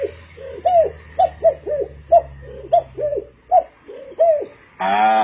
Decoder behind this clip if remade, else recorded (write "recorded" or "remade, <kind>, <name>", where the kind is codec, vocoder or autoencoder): recorded